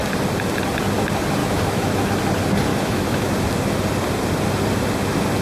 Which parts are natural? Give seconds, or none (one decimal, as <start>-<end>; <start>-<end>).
0.0-1.4; 2.1-2.7; 3.3-5.4